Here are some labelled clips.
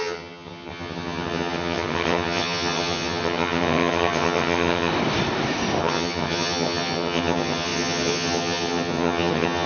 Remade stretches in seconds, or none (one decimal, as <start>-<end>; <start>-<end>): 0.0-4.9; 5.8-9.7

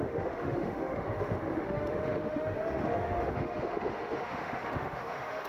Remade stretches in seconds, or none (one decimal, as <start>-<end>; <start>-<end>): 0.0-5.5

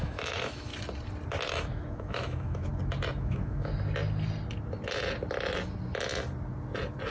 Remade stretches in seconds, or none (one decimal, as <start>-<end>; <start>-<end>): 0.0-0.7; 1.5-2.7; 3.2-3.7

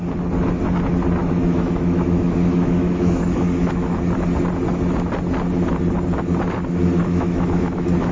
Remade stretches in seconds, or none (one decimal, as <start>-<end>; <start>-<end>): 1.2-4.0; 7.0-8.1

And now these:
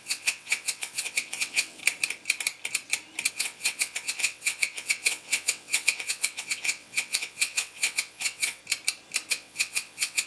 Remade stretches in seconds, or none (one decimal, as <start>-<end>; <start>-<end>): 0.0-1.8; 3.3-8.6; 9.3-10.3

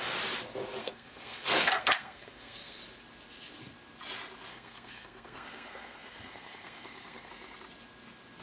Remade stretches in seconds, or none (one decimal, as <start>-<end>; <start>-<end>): 0.8-2.8; 4.5-7.3